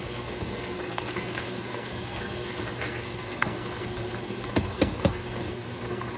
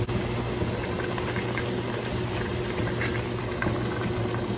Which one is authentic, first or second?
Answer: second